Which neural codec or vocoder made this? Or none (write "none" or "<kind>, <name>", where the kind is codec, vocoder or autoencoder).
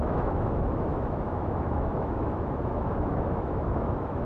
autoencoder, DAC-VAE